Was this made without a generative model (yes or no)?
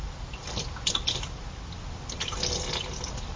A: no